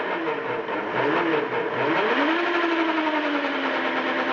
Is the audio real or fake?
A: real